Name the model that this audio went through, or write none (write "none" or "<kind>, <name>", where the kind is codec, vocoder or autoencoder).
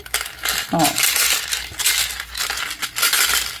none